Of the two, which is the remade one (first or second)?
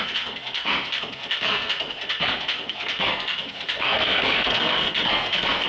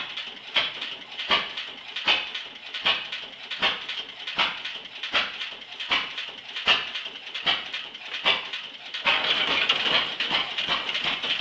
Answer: first